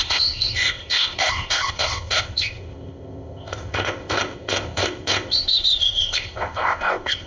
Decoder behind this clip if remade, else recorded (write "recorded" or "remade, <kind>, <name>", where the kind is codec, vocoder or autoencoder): remade, codec, ZipCodec